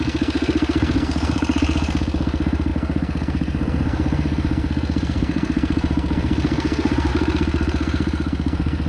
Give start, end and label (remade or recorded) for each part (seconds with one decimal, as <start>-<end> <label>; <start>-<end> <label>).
0.0-8.9 remade